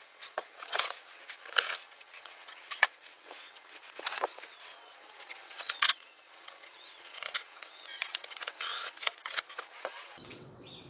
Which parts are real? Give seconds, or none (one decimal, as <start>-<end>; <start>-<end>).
none